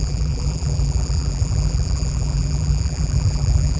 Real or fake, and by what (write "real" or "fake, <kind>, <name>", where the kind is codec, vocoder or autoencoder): fake, vocoder, BigVGAN v2